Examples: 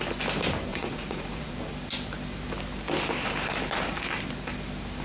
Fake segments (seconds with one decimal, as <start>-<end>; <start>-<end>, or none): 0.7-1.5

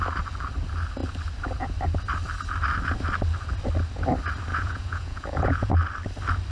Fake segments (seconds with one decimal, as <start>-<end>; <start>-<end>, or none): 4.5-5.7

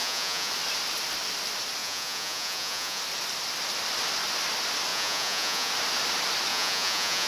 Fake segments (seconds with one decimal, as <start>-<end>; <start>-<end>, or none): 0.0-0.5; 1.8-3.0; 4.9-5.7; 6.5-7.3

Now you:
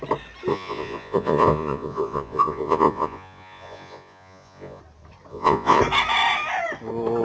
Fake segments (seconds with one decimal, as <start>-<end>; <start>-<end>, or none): 0.5-4.8; 5.3-5.8

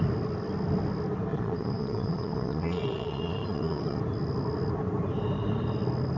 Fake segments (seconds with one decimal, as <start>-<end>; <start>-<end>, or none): 1.3-4.0

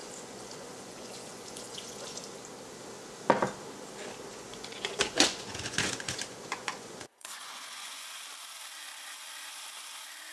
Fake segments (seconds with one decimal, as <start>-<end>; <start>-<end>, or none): 0.0-2.2; 4.3-8.2

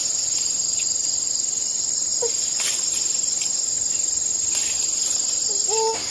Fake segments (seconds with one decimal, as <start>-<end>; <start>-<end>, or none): none